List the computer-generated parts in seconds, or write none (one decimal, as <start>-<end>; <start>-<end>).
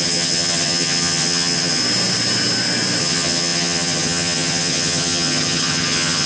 0.0-1.8; 3.0-6.3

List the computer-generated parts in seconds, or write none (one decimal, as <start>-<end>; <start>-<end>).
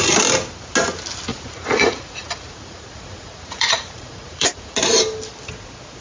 1.3-4.9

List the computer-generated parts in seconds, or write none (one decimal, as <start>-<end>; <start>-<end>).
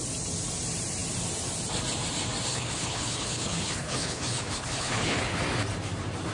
2.5-5.4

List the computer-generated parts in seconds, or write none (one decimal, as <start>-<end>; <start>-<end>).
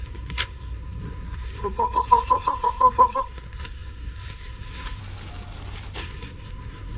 0.0-5.0; 6.0-7.0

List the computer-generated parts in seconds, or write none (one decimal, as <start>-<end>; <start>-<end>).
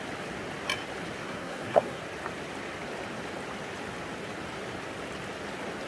1.2-2.0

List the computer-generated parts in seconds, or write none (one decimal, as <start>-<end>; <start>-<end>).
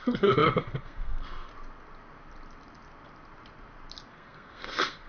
0.0-1.5; 4.1-5.1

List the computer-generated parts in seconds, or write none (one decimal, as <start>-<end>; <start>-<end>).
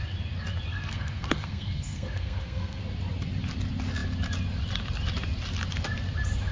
0.7-2.8